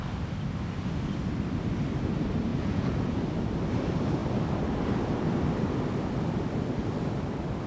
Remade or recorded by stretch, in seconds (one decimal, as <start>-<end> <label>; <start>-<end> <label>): 0.0-2.5 recorded; 2.5-3.2 remade; 3.2-7.7 recorded

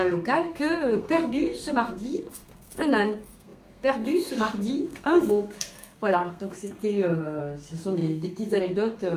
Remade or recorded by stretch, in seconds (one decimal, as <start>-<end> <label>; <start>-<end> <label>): 0.0-9.2 remade

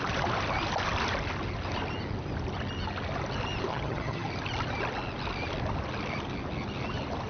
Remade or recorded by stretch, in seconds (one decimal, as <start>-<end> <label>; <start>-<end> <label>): 0.0-3.7 recorded; 3.7-4.3 remade; 4.3-7.3 recorded

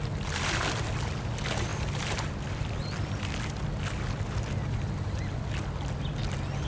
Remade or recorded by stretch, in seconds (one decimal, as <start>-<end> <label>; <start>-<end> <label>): 0.0-6.7 recorded

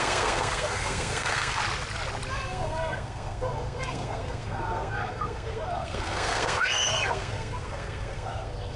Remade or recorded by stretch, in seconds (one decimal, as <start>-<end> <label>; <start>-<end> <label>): 0.0-1.6 remade; 1.6-2.3 recorded; 2.3-8.8 remade